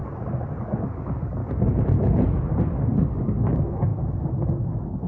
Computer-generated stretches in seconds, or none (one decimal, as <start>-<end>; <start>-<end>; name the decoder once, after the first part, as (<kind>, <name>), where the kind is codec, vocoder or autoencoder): 0.6-1.4 (codec, DAC); 3.0-3.9